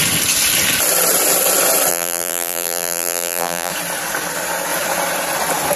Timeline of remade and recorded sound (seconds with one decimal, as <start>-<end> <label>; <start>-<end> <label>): 0.0-1.9 recorded; 1.9-3.7 remade; 3.7-5.8 recorded

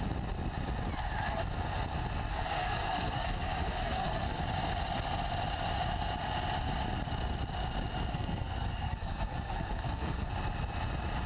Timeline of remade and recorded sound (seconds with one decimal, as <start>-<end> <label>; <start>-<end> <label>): 0.0-2.3 recorded; 2.3-4.4 remade; 4.4-8.1 recorded; 8.1-10.3 remade; 10.3-11.3 recorded

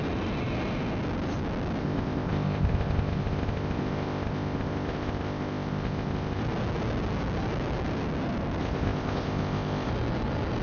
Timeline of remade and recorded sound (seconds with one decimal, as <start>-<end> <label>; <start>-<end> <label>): 0.0-1.8 recorded; 1.8-6.4 remade; 6.4-8.6 recorded; 8.6-9.9 remade; 9.9-10.6 recorded

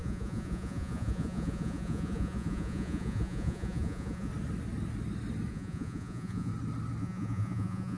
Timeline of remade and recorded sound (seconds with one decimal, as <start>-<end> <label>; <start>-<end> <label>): 0.0-4.3 remade; 4.3-5.5 recorded; 5.5-6.5 remade; 6.5-7.0 recorded; 7.0-8.0 remade